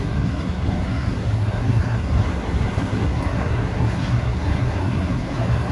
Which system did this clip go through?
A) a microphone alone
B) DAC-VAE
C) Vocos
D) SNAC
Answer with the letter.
D